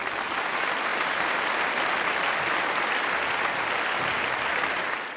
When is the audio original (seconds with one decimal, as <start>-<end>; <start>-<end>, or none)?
0.0-5.2